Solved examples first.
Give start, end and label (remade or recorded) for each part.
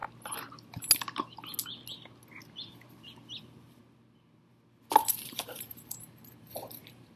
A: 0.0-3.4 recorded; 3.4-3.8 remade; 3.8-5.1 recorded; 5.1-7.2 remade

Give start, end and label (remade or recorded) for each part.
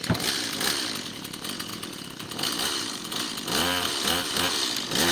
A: 0.0-5.1 remade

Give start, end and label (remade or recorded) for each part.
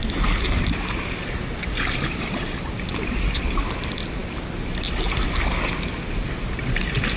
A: 0.0-2.7 remade; 2.7-7.2 recorded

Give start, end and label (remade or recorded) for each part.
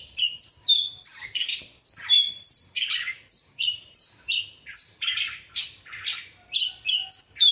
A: 0.0-1.1 recorded; 1.1-1.6 remade; 1.6-2.1 recorded; 2.1-6.3 remade; 6.3-7.5 recorded